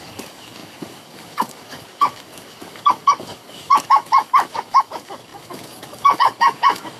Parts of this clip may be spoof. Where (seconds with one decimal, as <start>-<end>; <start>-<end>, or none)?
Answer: 0.0-7.0